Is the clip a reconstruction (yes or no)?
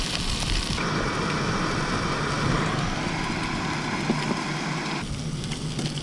no